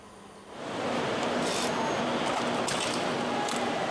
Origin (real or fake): real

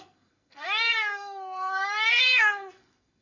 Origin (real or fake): fake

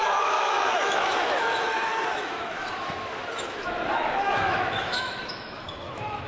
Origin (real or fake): fake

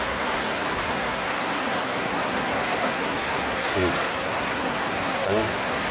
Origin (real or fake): fake